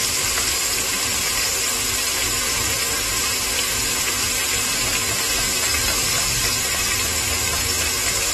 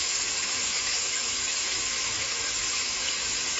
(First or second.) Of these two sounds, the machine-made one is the second